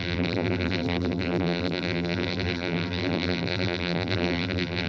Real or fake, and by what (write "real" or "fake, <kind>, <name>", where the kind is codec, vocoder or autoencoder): fake, vocoder, BigVGAN v2